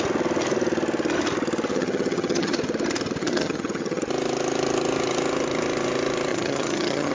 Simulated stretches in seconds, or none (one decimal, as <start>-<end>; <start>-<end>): 1.7-2.6; 3.2-4.0; 6.3-7.1